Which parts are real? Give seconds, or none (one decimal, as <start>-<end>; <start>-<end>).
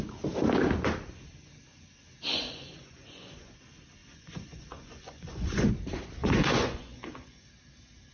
0.0-2.3; 3.5-4.0; 5.7-6.2; 7.5-8.1